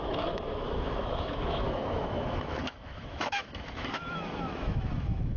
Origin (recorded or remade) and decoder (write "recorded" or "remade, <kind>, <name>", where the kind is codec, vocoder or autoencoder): remade, autoencoder, DAC-VAE